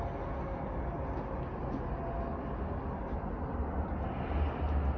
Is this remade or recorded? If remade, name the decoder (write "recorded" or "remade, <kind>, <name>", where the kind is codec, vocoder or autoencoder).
recorded